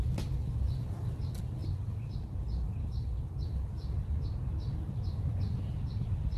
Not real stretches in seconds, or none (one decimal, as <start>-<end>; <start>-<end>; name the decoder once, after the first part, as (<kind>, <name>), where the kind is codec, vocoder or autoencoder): none